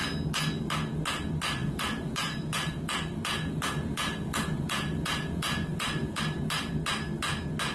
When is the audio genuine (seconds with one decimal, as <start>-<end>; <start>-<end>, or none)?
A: 0.0-1.6; 6.2-7.7